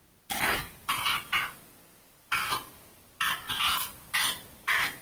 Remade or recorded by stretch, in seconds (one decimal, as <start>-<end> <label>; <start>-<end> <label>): 0.0-5.0 recorded